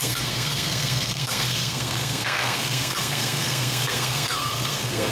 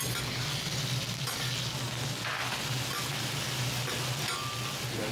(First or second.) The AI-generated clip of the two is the first